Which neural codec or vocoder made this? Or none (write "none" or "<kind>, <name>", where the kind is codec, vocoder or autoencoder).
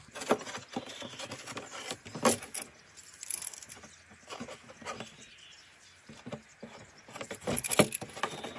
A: none